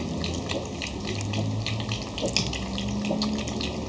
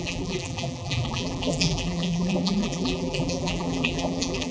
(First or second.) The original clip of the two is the first